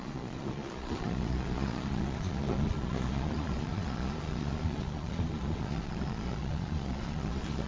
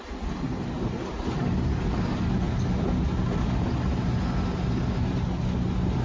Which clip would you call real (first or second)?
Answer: second